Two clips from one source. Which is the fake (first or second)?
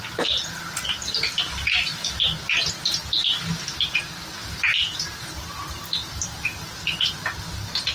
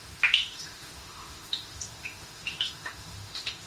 second